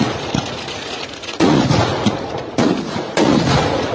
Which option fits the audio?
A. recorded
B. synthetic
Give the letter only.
B